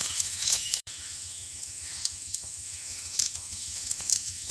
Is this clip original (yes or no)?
no